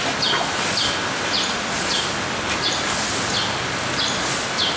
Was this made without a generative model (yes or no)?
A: yes